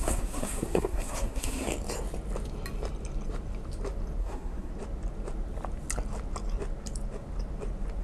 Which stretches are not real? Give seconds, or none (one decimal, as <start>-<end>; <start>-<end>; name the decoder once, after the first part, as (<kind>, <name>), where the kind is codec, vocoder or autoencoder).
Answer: 0.0-1.7 (codec, SNAC); 4.2-4.7